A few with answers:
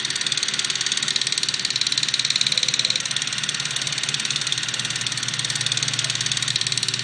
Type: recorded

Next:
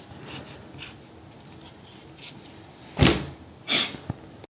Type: recorded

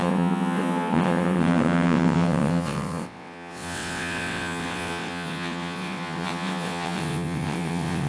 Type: remade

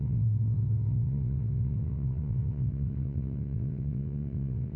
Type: remade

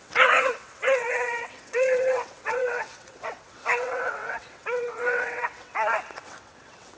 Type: remade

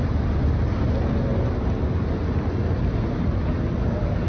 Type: recorded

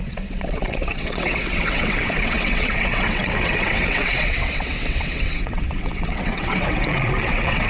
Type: remade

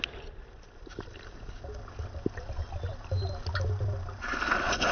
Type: recorded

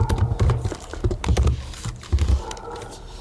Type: recorded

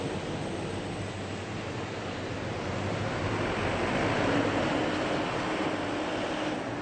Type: recorded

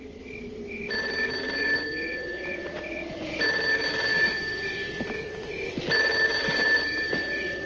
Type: recorded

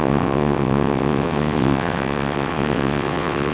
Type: remade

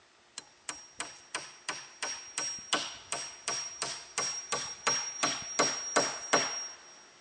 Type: recorded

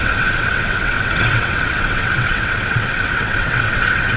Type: remade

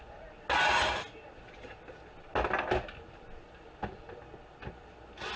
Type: recorded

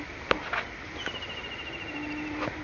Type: recorded